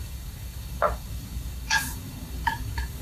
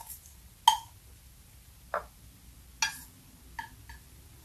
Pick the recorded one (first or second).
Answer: second